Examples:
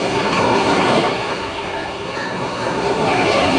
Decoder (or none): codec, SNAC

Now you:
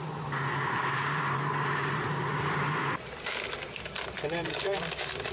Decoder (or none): vocoder, BigVGAN v2